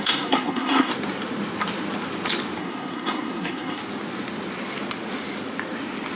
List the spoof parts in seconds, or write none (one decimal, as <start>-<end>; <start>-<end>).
0.0-0.9; 2.6-3.8